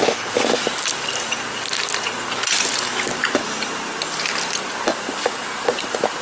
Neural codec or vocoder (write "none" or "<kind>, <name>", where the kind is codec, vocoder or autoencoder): none